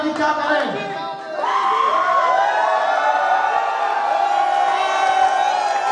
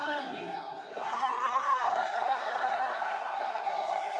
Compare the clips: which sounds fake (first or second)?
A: second